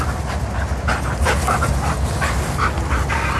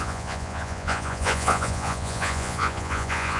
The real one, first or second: first